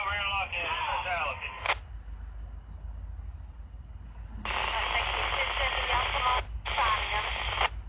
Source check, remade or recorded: recorded